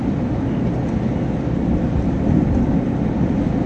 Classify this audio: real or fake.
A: real